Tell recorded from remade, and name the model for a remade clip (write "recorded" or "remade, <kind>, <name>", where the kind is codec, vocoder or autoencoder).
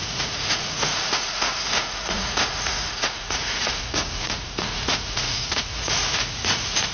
remade, vocoder, Vocos